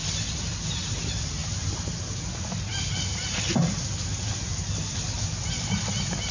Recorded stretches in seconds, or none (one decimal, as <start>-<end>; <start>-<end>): 0.0-6.3